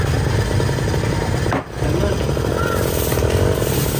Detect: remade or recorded recorded